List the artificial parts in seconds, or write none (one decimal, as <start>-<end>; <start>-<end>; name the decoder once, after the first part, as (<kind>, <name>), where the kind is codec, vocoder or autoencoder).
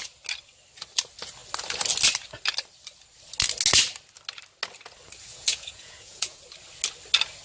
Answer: 5.3-6.4 (vocoder, Vocos)